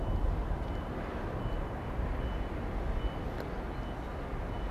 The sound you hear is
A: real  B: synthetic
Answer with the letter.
A